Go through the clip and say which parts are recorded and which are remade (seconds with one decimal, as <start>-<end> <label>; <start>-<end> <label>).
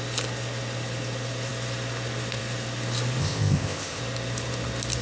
0.0-3.2 recorded; 3.2-4.0 remade; 4.0-5.0 recorded